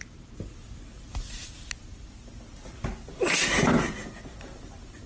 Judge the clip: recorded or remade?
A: recorded